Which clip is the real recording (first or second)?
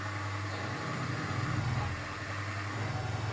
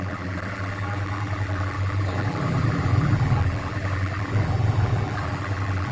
first